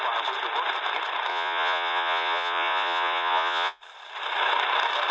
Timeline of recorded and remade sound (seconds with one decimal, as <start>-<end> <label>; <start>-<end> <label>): 0.0-1.3 recorded; 1.3-3.8 remade; 3.8-5.1 recorded